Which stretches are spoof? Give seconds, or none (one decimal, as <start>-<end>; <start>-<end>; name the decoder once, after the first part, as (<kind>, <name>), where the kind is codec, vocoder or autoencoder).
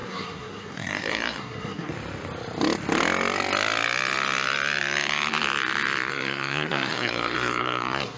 0.0-1.9 (codec, SNAC); 6.1-8.2